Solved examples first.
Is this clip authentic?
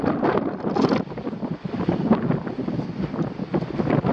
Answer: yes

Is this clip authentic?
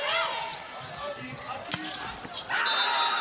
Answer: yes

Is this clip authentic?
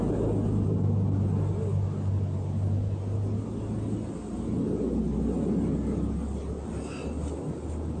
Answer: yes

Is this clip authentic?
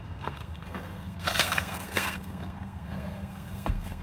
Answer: no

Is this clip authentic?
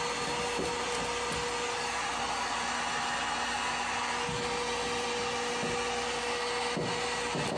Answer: yes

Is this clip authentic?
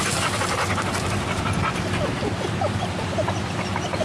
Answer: yes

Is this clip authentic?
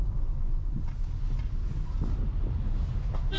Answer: yes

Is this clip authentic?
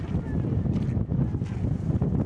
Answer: yes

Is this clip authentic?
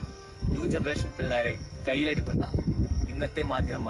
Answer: no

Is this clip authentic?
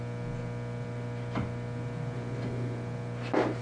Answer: yes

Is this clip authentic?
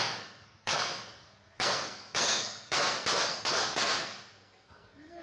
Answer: no